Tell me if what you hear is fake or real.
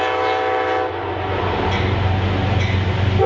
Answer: real